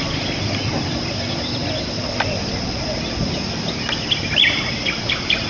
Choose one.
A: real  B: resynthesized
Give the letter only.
A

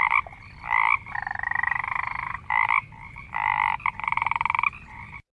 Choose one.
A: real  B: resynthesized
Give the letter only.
A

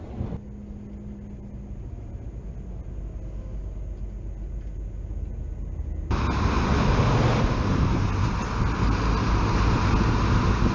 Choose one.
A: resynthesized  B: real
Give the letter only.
B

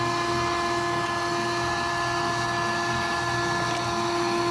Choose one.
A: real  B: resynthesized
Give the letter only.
A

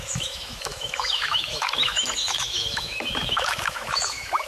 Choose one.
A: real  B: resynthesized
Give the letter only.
B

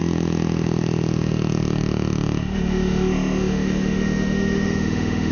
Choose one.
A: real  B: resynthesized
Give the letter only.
B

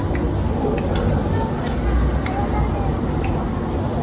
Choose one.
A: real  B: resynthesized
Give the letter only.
A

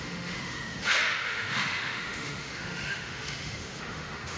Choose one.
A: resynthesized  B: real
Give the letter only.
A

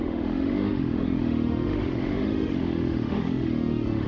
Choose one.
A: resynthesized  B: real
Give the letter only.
A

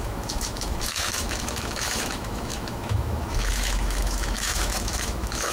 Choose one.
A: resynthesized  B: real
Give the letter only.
A